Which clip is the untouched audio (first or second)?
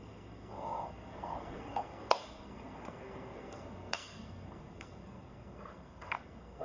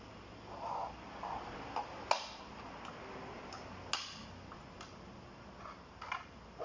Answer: second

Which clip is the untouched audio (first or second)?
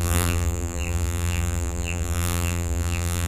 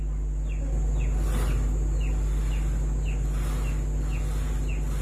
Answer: second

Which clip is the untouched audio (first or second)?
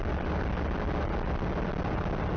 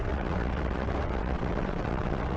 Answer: first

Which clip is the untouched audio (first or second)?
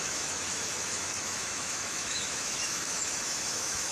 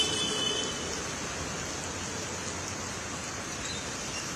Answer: second